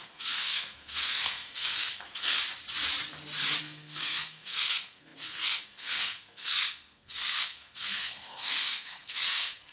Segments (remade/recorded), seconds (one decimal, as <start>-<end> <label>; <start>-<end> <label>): 0.0-2.4 remade; 2.4-3.6 recorded; 3.6-9.7 remade